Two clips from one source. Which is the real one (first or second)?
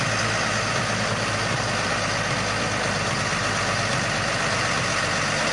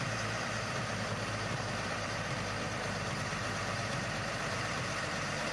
first